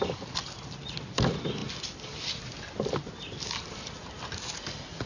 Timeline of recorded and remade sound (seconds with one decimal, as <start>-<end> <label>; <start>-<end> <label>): 0.0-5.1 recorded